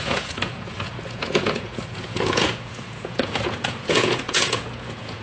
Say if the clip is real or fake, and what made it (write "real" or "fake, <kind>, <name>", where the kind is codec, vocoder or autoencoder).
fake, vocoder, Vocos